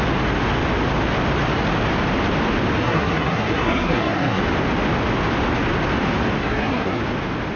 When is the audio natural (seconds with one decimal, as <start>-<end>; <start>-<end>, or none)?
0.0-2.8; 4.4-6.4; 7.0-7.6

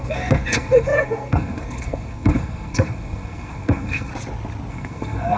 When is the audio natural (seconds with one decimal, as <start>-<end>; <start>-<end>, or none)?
4.1-4.7